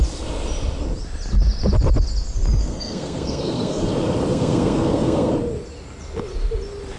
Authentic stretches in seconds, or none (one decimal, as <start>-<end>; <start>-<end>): 0.0-2.6; 3.9-4.3; 5.3-7.0